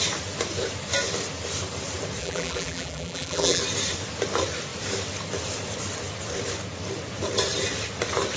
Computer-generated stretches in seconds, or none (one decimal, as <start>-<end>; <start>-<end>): 2.2-3.6